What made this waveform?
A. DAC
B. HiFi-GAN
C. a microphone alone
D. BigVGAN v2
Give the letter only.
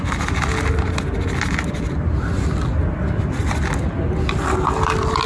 C